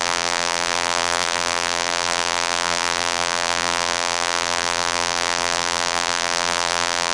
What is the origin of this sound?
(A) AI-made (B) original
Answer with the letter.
A